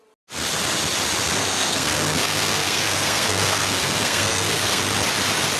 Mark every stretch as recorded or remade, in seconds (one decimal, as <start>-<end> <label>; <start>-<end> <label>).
0.0-1.4 recorded; 1.4-4.8 remade; 4.8-5.6 recorded